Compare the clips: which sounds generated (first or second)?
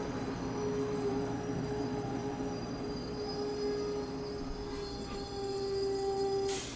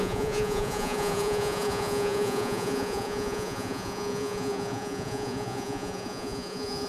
second